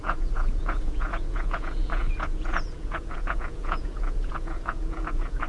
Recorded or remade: remade